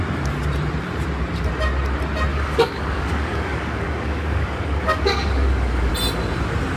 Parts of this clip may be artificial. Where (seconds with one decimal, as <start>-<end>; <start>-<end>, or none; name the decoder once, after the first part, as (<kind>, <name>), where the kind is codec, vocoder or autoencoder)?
2.3-5.9 (codec, DAC)